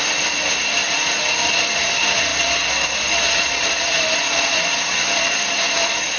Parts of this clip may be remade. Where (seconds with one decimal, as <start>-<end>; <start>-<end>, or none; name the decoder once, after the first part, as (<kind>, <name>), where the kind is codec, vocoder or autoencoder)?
none